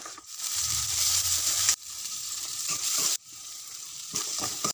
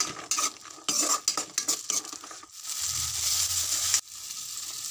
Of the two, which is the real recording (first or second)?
second